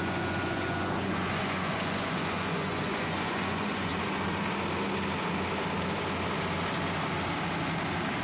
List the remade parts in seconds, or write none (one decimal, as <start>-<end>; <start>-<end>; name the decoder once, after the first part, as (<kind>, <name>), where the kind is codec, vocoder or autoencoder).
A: 0.0-3.9 (vocoder, Vocos)